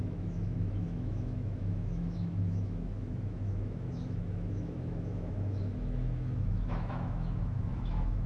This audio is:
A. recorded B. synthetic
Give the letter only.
B